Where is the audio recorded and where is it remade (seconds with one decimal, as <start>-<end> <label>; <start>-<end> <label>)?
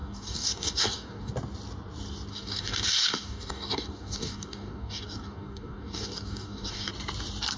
0.0-1.3 remade; 1.3-2.3 recorded; 2.3-6.9 remade; 6.9-7.6 recorded